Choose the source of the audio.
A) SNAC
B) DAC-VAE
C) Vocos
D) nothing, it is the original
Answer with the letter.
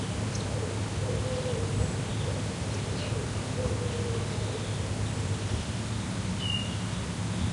D